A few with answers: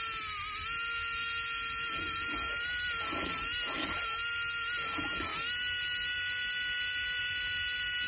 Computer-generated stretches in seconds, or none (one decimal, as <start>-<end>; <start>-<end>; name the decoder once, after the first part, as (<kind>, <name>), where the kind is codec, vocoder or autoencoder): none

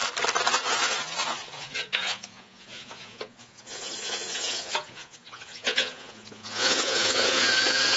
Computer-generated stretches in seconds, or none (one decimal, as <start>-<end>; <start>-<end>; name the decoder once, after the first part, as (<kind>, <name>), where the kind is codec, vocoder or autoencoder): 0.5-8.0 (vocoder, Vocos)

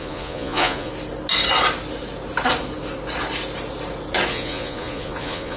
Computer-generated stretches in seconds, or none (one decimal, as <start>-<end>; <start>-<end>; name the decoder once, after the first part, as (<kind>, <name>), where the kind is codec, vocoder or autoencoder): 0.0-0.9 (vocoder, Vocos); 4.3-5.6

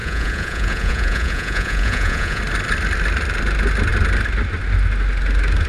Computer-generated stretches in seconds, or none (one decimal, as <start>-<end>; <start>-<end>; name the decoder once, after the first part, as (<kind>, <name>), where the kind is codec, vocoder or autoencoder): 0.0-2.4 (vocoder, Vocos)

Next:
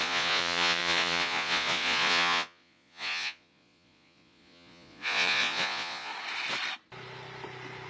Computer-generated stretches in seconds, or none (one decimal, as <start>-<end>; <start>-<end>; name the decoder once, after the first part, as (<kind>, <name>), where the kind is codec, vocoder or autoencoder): 0.0-6.1 (vocoder, Vocos)

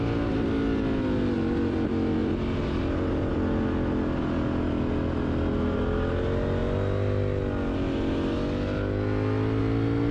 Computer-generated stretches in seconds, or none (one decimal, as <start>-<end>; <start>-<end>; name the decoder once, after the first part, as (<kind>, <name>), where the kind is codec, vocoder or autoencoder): none